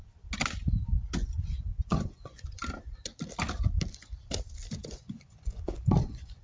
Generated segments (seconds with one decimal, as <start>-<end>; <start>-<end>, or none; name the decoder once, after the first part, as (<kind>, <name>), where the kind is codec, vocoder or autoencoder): 1.7-2.6 (vocoder, Vocos); 4.8-6.4